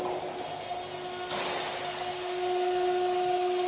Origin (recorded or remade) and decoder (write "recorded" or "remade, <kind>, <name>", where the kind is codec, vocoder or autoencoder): recorded